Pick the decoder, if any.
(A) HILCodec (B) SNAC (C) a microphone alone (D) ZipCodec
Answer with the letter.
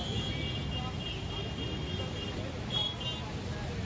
C